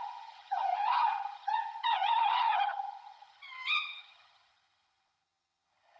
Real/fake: fake